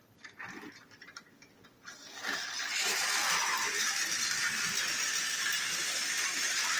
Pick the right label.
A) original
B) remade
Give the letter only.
A